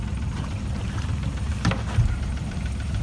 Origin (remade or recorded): remade